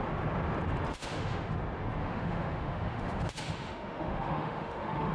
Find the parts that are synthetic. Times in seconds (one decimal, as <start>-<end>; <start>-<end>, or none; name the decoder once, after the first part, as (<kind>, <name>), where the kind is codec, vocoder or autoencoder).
0.9-1.6 (autoencoder, DAC-VAE); 2.0-5.1